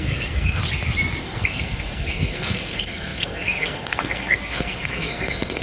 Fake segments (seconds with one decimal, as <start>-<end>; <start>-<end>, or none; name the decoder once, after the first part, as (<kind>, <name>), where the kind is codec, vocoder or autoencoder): 0.0-0.6 (codec, SNAC); 1.2-5.6